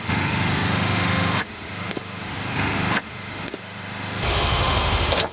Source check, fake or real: fake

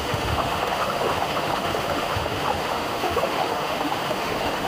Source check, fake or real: fake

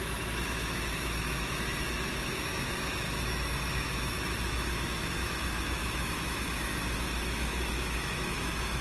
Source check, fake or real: fake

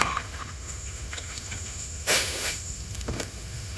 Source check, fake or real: fake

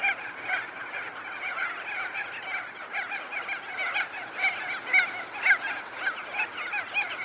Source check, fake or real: real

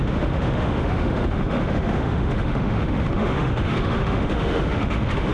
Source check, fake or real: fake